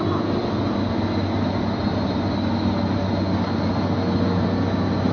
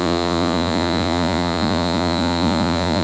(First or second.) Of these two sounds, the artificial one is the second